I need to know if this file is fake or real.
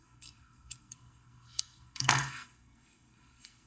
fake